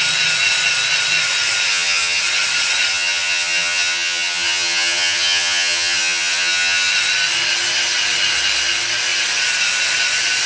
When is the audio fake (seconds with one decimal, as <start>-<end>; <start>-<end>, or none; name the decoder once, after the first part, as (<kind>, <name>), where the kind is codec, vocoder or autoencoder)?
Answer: 1.7-2.2 (vocoder, HiFi-GAN); 2.9-6.9